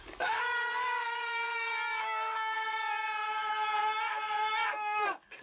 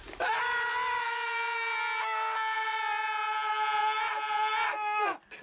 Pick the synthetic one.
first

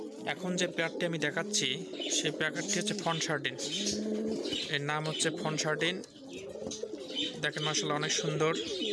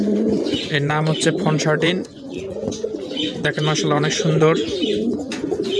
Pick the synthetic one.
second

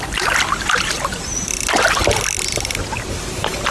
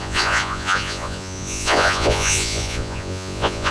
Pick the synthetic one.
second